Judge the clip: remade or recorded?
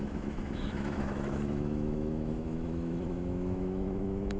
remade